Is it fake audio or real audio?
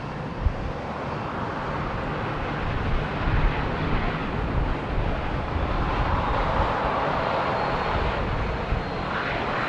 real